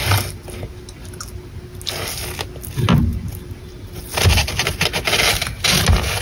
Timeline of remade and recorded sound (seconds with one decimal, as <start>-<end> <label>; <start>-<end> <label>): 0.0-3.1 recorded; 3.1-4.0 remade; 4.0-6.2 recorded